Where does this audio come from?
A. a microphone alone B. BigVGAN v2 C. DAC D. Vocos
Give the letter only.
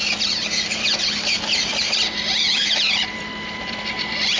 B